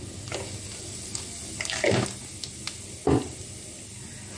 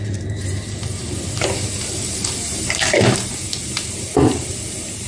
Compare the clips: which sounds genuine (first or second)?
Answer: first